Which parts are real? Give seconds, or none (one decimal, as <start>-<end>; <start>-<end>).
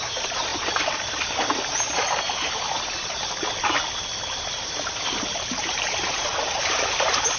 0.5-4.7; 6.3-7.4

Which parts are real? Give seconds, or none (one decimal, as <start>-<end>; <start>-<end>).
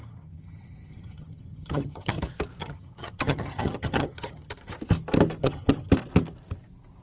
2.2-2.6; 4.5-5.4; 5.9-7.0